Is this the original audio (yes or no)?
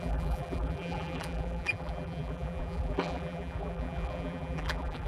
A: no